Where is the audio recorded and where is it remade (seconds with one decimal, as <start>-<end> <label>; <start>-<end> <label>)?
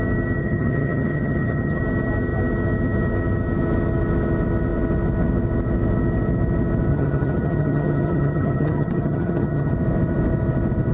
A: 0.0-0.4 recorded; 0.4-1.8 remade; 1.8-6.9 recorded; 6.9-9.7 remade; 9.7-10.9 recorded